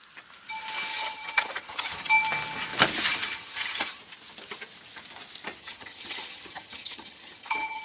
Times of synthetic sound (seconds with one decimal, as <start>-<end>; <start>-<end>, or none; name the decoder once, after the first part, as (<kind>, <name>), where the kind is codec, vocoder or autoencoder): 0.9-2.1 (vocoder, HiFi-GAN); 3.1-4.0; 5.6-7.8